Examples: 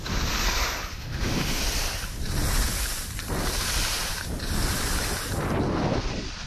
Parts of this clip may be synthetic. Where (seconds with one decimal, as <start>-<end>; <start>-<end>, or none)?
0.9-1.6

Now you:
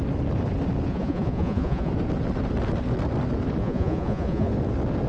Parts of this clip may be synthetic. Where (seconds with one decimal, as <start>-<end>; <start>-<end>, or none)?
0.9-1.9; 3.6-4.5

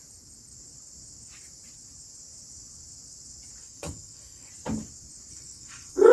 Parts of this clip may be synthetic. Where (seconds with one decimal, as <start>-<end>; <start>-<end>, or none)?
3.6-4.5; 5.3-6.1